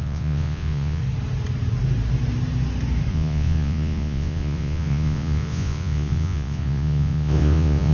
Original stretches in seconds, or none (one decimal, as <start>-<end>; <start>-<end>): 1.0-3.1